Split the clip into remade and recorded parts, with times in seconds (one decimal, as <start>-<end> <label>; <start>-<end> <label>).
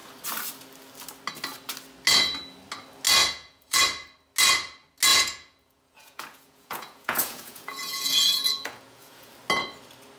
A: 0.0-3.2 recorded; 3.2-3.8 remade; 3.8-5.1 recorded; 5.1-9.3 remade; 9.3-10.2 recorded